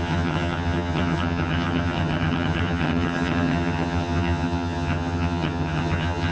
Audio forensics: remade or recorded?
remade